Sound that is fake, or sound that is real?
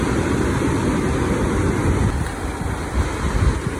real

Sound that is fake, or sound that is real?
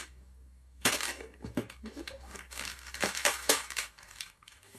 fake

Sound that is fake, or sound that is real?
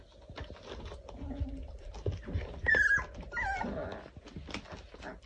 real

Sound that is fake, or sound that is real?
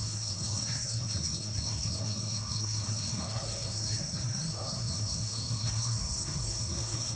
fake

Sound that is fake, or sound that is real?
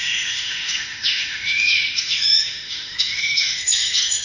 fake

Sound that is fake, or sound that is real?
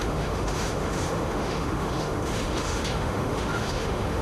fake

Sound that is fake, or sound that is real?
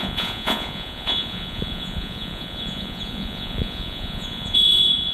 fake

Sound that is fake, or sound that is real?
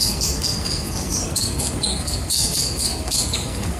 fake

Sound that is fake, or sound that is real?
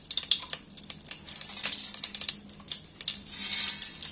real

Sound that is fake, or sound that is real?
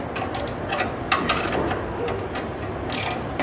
real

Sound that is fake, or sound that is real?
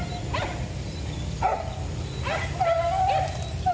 real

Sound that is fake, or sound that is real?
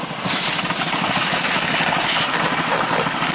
real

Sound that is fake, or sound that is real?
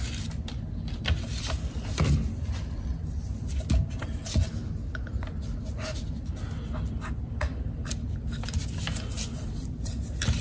real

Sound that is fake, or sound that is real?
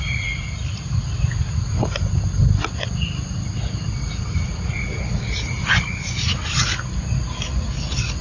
real